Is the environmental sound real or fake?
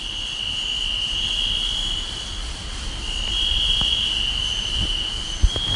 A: real